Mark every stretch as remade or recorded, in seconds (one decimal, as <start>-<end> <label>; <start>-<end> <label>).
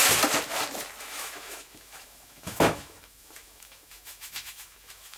0.0-1.0 recorded; 1.0-5.2 remade